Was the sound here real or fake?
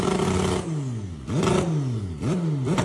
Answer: real